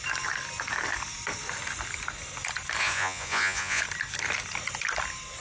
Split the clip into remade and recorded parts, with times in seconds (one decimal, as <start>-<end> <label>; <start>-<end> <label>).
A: 0.0-2.8 recorded; 2.8-3.8 remade; 3.8-5.4 recorded